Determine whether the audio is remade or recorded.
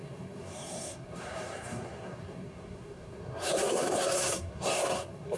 remade